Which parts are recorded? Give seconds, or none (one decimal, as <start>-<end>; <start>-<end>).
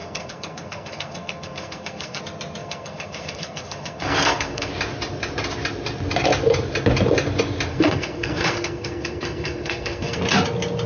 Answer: 2.2-2.6; 4.7-7.7; 10.2-10.9